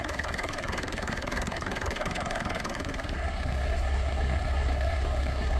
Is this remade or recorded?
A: remade